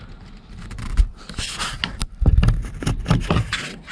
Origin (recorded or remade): recorded